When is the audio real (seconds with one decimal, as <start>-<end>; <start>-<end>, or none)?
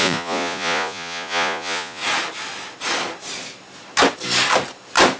2.0-5.2